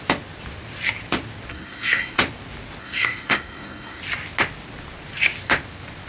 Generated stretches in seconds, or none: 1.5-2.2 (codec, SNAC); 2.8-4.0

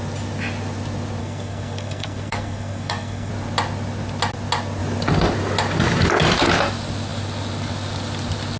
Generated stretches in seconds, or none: 1.2-3.3 (codec, SNAC)

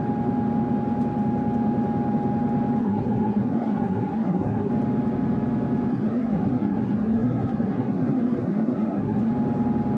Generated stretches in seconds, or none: 2.8-4.7 (codec, SNAC); 5.9-9.3

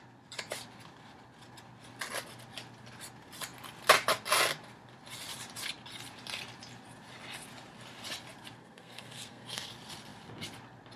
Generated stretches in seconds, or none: 8.6-9.7 (codec, SNAC)

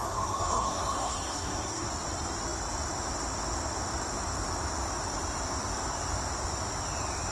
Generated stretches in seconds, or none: 0.0-1.9 (codec, SNAC)